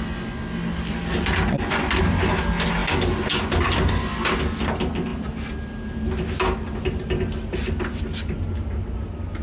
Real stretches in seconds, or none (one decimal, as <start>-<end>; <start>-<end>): 0.0-9.4